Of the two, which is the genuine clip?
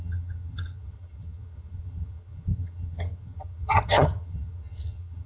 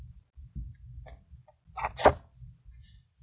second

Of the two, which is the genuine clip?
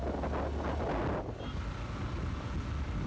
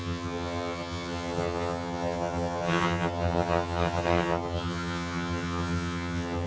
first